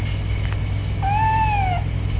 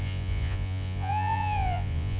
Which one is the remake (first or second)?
second